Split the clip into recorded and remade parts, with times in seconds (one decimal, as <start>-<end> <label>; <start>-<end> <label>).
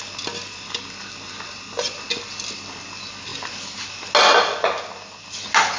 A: 0.0-5.8 recorded